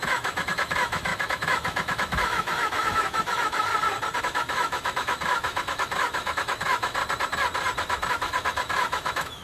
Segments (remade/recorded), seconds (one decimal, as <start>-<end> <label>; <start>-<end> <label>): 0.0-3.7 remade; 3.7-4.2 recorded; 4.2-7.0 remade; 7.0-8.1 recorded; 8.1-9.4 remade